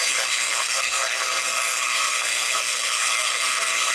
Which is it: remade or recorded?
remade